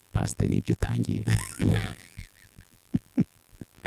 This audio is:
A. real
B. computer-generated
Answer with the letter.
B